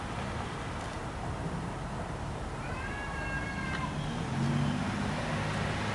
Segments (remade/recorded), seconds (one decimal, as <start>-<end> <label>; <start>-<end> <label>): 0.0-5.9 recorded